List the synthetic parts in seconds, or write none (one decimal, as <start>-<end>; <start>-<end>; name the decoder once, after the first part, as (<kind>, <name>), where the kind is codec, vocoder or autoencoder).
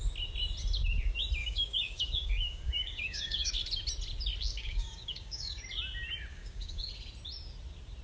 1.4-3.5 (codec, DAC); 4.5-5.6; 6.3-6.9